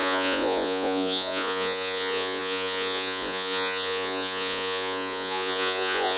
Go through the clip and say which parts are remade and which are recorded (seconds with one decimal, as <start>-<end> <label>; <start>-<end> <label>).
0.0-6.2 remade